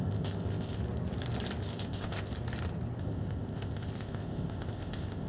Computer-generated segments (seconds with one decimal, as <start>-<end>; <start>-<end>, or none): 0.0-0.8; 1.6-2.3; 3.0-5.3